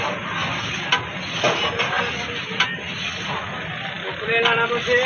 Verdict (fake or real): real